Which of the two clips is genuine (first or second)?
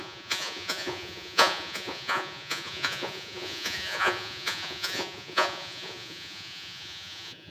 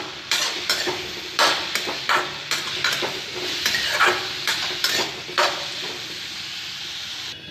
second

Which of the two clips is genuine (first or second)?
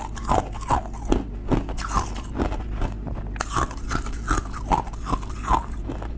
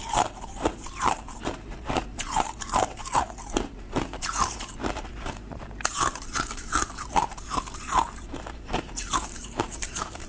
first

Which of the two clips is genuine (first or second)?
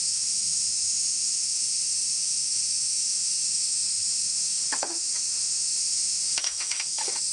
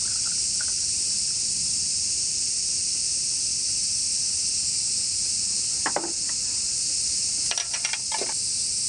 second